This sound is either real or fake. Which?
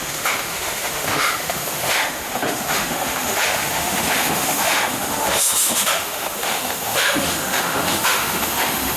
fake